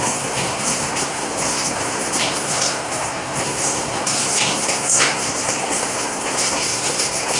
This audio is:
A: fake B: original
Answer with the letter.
A